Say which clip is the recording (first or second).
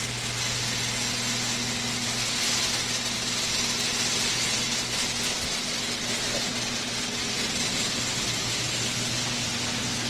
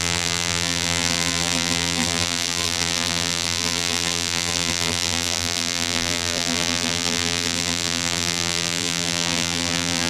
first